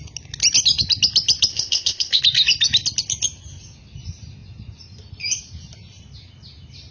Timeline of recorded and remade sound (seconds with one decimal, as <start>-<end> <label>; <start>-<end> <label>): 0.0-1.5 recorded; 1.5-2.2 remade; 2.2-6.9 recorded